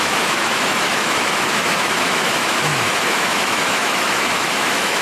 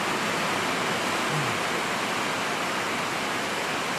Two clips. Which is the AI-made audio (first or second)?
first